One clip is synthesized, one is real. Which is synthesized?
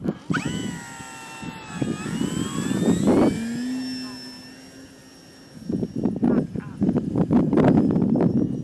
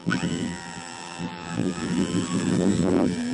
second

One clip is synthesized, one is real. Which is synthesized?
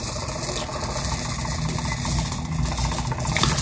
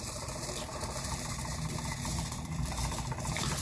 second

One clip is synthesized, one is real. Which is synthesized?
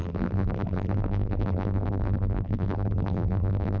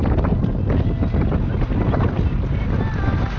first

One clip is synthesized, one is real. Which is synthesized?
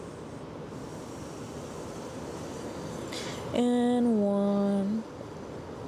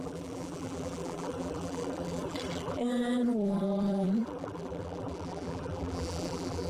second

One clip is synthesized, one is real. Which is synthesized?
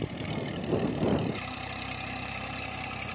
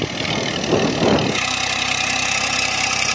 first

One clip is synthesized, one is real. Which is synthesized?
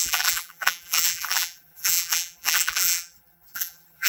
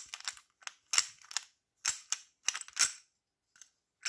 first